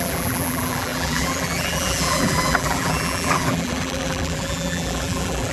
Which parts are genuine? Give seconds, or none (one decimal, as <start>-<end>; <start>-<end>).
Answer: none